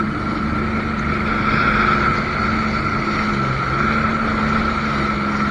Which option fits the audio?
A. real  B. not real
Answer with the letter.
A